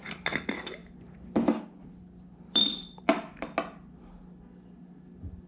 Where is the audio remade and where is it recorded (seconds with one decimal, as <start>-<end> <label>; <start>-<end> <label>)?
0.0-5.5 recorded